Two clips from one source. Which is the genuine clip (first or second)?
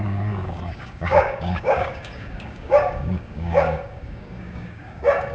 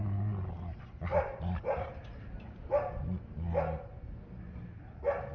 second